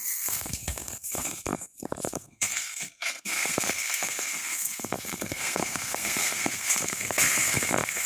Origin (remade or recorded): remade